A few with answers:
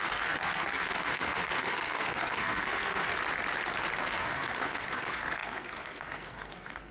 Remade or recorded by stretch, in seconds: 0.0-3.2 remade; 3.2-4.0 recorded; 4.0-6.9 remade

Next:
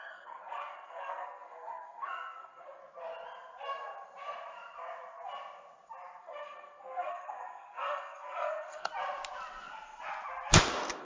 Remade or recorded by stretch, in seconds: 0.0-2.8 remade; 2.8-6.2 recorded; 6.2-8.9 remade; 8.9-11.0 recorded

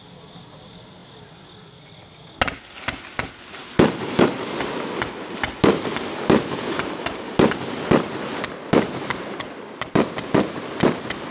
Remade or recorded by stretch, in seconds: 0.0-11.3 recorded

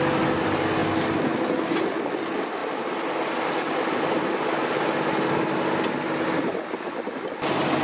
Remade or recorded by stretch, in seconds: 0.0-7.8 recorded